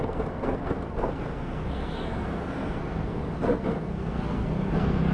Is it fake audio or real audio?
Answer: fake